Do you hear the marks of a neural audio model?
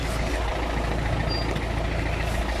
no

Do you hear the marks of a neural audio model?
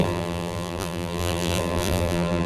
yes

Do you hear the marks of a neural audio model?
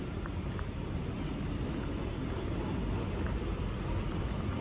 no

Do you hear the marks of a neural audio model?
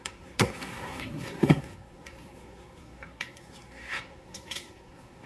yes